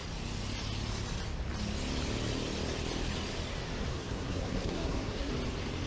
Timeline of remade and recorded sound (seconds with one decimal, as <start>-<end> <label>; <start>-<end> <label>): 0.0-3.9 recorded; 3.9-5.3 remade; 5.3-5.9 recorded